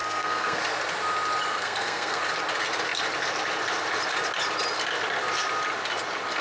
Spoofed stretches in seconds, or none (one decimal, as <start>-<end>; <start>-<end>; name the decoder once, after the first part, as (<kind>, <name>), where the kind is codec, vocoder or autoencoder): 0.0-0.6 (codec, SNAC); 1.5-2.2

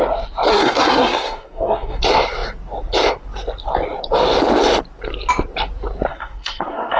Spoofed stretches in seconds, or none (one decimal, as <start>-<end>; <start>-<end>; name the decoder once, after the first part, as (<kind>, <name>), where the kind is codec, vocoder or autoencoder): 0.5-2.0 (codec, SNAC); 6.1-7.0